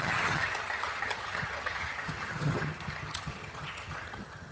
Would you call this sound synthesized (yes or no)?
yes